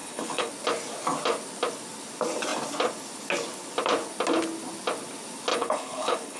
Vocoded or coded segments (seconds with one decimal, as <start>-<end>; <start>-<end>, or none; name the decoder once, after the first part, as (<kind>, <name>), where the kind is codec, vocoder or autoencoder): 0.0-0.5 (codec, HILCodec); 5.5-6.4